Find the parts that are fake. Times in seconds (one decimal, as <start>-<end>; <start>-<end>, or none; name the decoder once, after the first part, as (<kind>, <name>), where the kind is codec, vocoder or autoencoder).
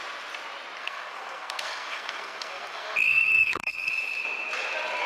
0.8-3.9 (codec, SNAC)